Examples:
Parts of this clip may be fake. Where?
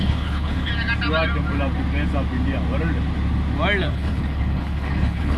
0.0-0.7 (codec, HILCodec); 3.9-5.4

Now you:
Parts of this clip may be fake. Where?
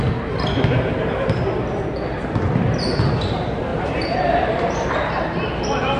3.7-4.9 (vocoder, BigVGAN v2)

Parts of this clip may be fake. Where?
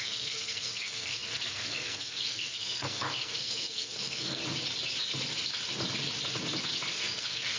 0.0-4.4 (codec, SNAC); 6.9-7.6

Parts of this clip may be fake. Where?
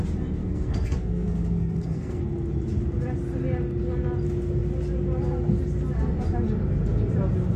0.4-2.2 (codec, SNAC)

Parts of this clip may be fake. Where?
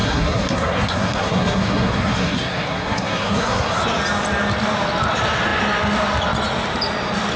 0.0-3.8 (codec, SNAC)